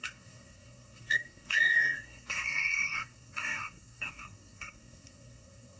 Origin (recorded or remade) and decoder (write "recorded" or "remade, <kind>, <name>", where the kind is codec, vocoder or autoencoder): remade, codec, SNAC